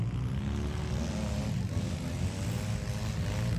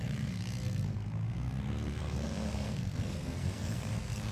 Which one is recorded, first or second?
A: first